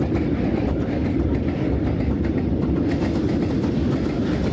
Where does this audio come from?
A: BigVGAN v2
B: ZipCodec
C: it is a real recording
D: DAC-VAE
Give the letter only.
C